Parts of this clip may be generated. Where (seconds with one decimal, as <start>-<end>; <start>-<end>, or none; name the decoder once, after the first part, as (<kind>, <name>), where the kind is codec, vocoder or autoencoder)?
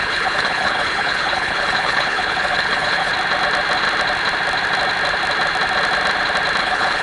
0.0-3.1 (codec, HILCodec); 6.6-7.0